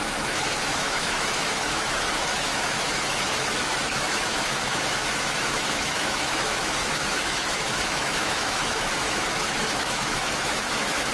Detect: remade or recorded remade